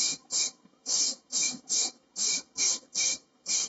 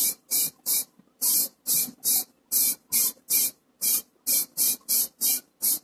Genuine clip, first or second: second